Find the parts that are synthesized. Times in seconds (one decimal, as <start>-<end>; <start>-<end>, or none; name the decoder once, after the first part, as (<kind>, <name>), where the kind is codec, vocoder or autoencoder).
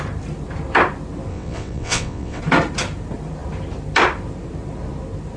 1.3-2.4 (vocoder, WaveNeXt)